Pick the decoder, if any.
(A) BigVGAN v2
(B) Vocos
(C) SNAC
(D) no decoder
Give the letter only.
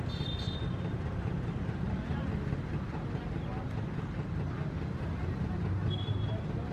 D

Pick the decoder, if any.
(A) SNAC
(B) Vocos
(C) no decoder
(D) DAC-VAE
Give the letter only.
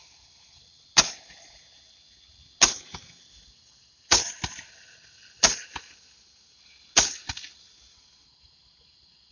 C